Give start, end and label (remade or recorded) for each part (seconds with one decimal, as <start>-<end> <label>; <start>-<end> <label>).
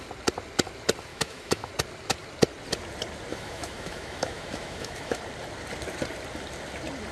0.0-1.1 recorded; 1.1-1.7 remade; 1.7-3.3 recorded; 3.3-5.2 remade; 5.2-7.1 recorded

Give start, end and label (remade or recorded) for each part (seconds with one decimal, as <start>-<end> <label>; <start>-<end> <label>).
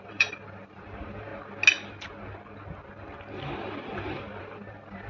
0.0-1.3 remade; 1.3-4.4 recorded; 4.4-5.1 remade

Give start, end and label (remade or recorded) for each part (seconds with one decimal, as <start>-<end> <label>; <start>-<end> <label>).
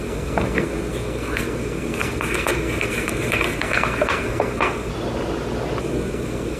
0.0-4.9 remade; 4.9-5.8 recorded; 5.8-6.6 remade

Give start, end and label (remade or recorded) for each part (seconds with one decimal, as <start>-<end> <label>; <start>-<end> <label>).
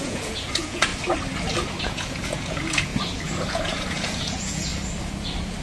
0.0-0.9 remade; 0.9-1.8 recorded; 1.8-2.9 remade; 2.9-3.5 recorded; 3.5-4.7 remade; 4.7-5.6 recorded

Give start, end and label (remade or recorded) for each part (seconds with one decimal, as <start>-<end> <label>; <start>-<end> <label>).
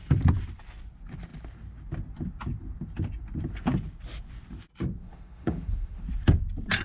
0.0-5.0 recorded; 5.0-6.0 remade; 6.0-6.8 recorded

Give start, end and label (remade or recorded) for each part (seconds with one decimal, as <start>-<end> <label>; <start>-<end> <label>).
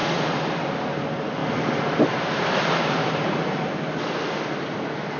0.0-0.6 remade; 0.6-1.4 recorded; 1.4-3.7 remade; 3.7-5.2 recorded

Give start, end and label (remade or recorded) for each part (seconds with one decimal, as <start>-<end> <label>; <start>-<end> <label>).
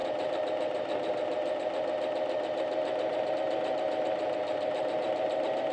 0.0-5.7 recorded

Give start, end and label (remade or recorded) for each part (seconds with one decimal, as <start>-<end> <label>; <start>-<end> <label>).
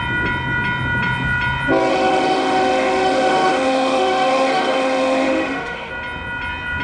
0.0-1.9 recorded; 1.9-5.9 remade; 5.9-6.8 recorded